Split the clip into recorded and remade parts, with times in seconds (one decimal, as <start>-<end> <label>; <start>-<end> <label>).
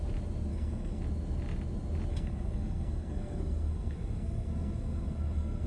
0.0-0.5 recorded; 0.5-1.0 remade; 1.0-2.1 recorded; 2.1-5.7 remade